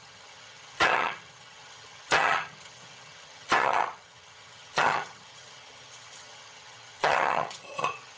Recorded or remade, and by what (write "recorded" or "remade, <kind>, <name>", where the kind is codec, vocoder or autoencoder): remade, vocoder, HiFi-GAN